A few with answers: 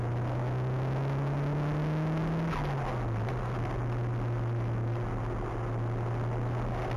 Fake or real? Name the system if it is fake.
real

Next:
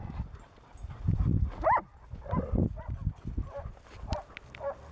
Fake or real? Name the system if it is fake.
real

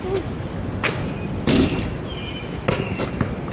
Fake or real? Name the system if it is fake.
real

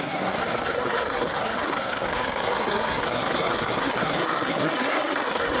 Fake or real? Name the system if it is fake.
fake, codec, SNAC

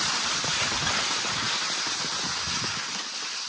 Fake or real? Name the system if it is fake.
real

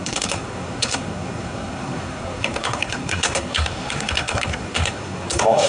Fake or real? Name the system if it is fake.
fake, codec, SNAC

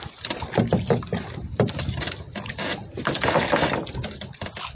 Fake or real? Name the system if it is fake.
real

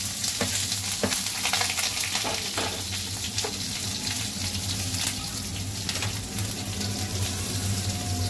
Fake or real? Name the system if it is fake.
real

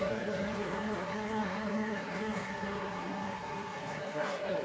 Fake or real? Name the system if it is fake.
fake, codec, SNAC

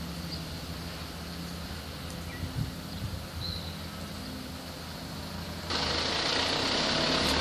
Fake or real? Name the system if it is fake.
real